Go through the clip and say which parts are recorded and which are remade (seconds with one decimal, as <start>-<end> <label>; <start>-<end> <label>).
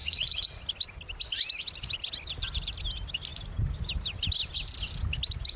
0.0-0.7 remade; 0.7-5.6 recorded